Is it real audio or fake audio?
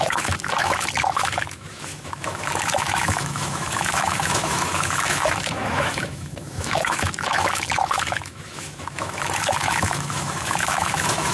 fake